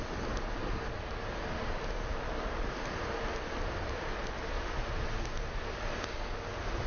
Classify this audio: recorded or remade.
recorded